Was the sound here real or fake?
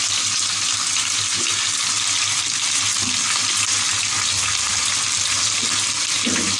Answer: real